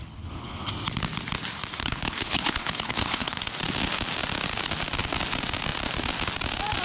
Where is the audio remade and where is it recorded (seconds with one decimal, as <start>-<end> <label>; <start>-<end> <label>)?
0.0-0.7 remade; 0.7-1.8 recorded; 1.8-3.5 remade; 3.5-6.8 recorded